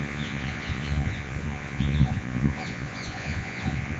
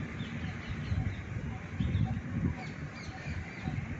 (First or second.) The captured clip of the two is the second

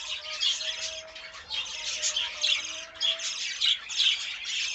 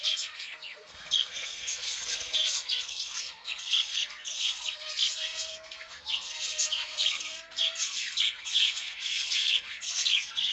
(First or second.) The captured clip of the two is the first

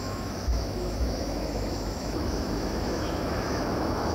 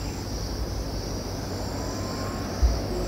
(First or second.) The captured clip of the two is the second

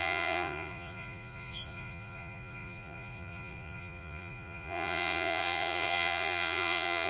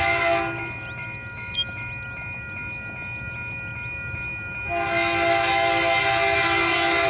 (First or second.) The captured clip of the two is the second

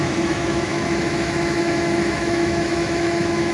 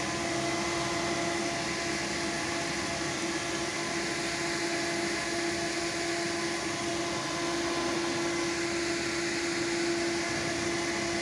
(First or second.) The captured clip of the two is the second